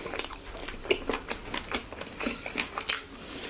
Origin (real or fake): real